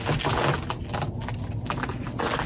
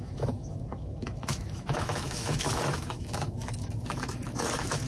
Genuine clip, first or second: first